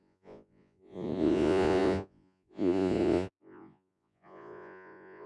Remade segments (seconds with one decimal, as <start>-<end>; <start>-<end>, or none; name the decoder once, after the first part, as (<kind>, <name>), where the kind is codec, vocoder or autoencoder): 0.0-5.3 (vocoder, Vocos)